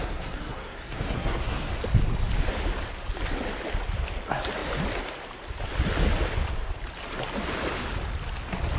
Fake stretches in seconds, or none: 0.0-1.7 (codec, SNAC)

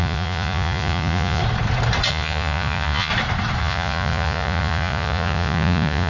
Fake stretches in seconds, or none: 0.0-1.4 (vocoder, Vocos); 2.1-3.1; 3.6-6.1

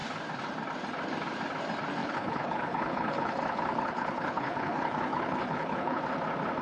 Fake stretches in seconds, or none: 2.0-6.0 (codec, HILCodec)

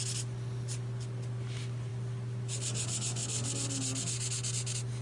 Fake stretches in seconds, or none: none

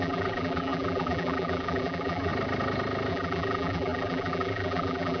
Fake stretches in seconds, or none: 0.0-2.3 (vocoder, BigVGAN v2); 3.1-5.2